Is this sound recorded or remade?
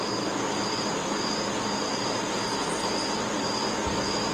recorded